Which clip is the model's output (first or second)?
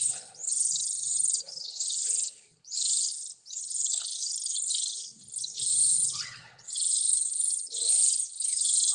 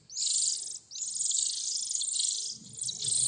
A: first